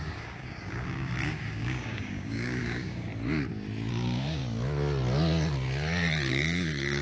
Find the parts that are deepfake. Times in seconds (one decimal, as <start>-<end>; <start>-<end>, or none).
0.0-3.1; 3.9-4.4; 6.3-7.0